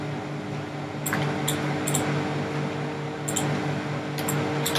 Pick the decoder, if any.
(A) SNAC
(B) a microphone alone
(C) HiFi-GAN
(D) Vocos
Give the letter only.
B